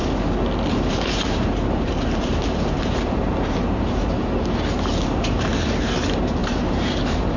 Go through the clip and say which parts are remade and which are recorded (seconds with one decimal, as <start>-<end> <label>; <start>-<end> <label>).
0.0-0.9 recorded; 0.9-7.4 remade